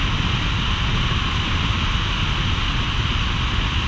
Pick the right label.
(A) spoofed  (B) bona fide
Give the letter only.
B